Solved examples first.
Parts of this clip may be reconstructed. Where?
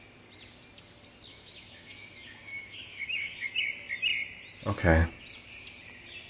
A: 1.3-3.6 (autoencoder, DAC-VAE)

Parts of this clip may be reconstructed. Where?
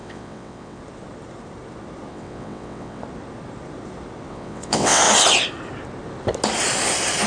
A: 0.0-0.8 (vocoder, WaveNeXt); 2.1-3.0; 4.3-5.0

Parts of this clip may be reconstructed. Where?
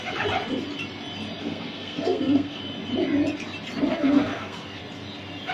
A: 1.4-2.6 (codec, SNAC); 3.9-4.8